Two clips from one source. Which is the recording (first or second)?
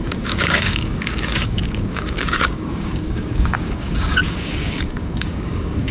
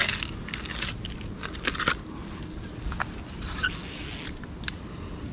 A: second